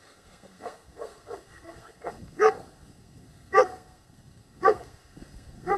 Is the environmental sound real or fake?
fake